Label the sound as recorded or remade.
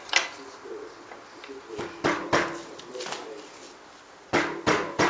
recorded